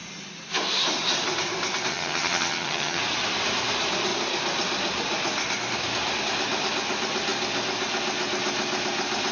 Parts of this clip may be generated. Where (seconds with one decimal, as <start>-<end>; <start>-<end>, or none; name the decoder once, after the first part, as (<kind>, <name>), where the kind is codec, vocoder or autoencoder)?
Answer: 1.9-3.0 (vocoder, HiFi-GAN)